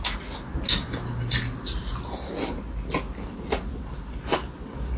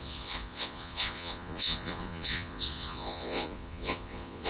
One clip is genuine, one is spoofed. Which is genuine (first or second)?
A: first